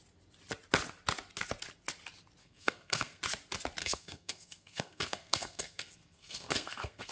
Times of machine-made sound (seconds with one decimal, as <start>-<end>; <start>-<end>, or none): 2.4-3.2; 3.8-7.1